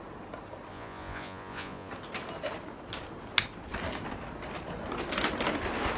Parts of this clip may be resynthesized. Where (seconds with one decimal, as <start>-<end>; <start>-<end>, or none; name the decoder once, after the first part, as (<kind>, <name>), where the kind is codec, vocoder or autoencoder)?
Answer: 0.7-1.9 (vocoder, Vocos)